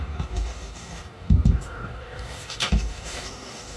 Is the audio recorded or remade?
remade